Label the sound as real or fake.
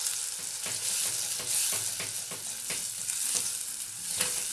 real